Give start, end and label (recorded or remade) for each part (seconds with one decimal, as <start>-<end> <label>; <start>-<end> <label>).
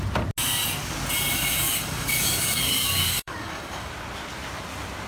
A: 0.0-1.4 recorded; 1.4-3.9 remade; 3.9-5.1 recorded